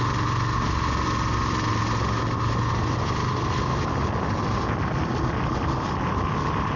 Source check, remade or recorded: recorded